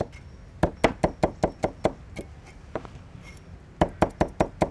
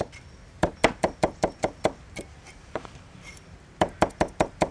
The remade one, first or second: second